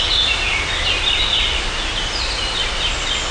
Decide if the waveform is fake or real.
real